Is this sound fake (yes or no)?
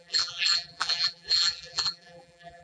yes